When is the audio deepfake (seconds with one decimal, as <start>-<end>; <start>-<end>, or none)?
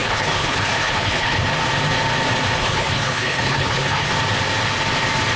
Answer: 0.0-1.4; 2.6-4.1